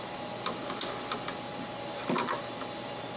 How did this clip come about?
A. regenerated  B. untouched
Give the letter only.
B